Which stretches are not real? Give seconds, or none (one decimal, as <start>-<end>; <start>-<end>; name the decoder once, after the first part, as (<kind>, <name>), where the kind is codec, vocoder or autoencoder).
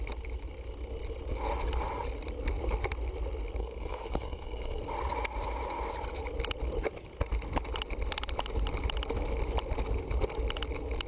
3.6-4.8 (codec, SNAC)